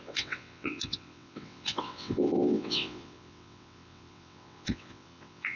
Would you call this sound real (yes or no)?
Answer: no